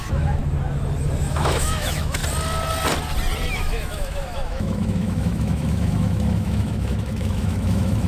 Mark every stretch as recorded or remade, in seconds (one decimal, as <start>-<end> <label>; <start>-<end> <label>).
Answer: 0.0-0.4 remade; 0.4-1.3 recorded; 1.3-2.2 remade; 2.2-3.5 recorded; 3.5-8.1 remade